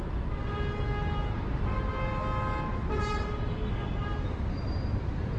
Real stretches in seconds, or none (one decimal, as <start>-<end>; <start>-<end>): 0.0-5.4